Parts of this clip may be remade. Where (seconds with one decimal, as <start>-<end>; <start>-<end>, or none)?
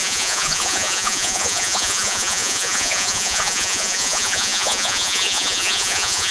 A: 0.0-6.3